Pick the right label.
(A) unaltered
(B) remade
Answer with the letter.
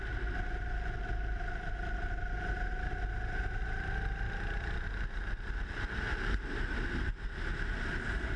A